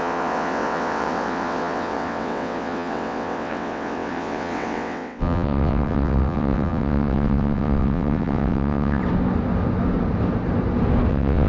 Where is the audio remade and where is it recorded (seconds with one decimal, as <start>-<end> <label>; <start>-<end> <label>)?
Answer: 0.0-9.0 remade; 9.0-11.1 recorded; 11.1-11.5 remade